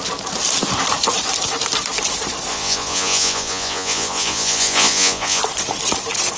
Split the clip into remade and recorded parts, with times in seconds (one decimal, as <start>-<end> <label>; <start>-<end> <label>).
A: 0.0-2.5 recorded; 2.5-5.4 remade; 5.4-6.4 recorded